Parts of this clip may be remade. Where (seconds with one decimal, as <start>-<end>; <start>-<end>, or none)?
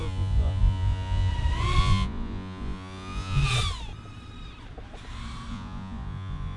0.0-1.3; 1.8-3.4; 5.5-6.6